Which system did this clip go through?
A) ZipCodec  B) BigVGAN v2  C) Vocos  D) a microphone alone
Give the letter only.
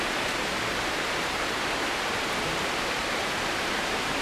B